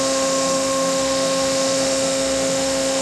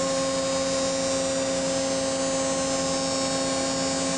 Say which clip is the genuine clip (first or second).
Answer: second